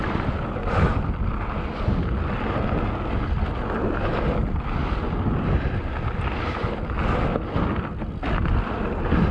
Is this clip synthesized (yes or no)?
no